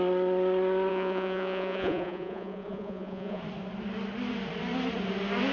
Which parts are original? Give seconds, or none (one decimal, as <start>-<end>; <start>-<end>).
0.0-0.9; 3.4-5.5

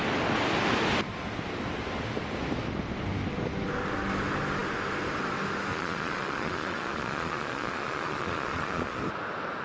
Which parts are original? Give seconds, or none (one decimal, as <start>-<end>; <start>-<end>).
0.0-5.7; 9.0-9.6